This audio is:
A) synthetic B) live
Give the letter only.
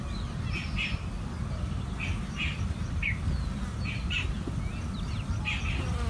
B